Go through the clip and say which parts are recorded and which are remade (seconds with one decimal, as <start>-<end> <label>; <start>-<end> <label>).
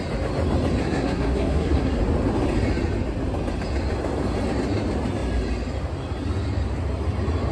0.0-0.8 recorded; 0.8-2.0 remade; 2.0-7.5 recorded